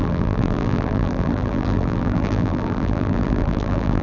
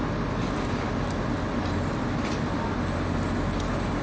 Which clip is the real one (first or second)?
second